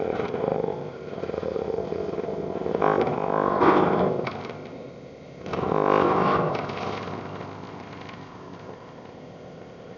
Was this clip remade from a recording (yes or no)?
yes